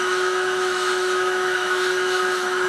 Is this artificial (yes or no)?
yes